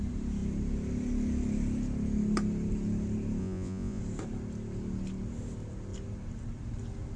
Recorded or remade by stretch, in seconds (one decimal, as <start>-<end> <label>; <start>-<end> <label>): 0.0-3.4 recorded; 3.4-4.0 remade; 4.0-7.2 recorded